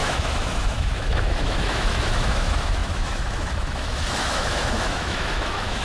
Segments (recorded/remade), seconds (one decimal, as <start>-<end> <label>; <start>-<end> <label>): 0.0-5.8 remade